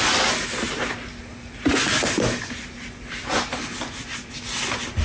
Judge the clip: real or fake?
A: real